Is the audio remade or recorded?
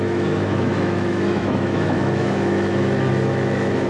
remade